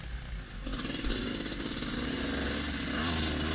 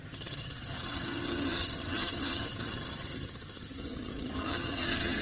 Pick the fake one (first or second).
second